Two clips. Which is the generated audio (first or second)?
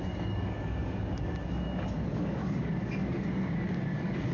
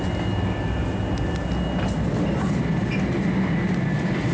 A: first